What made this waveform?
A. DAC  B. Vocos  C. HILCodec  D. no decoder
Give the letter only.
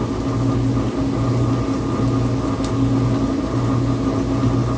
D